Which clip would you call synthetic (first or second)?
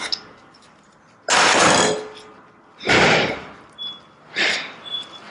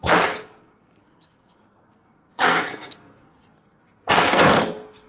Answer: second